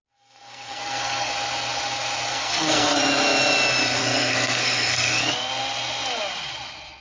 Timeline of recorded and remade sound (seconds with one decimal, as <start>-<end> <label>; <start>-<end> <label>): 0.0-1.3 remade; 1.3-2.3 recorded; 2.3-3.0 remade; 3.0-4.0 recorded; 4.0-5.3 remade; 5.3-7.0 recorded